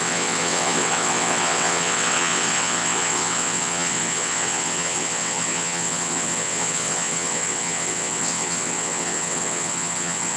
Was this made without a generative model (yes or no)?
no